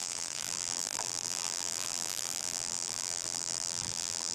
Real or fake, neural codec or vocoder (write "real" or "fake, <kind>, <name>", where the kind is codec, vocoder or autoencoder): fake, vocoder, BigVGAN v2